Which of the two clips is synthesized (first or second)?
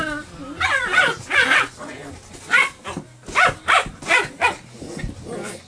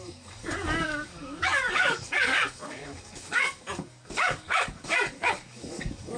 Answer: second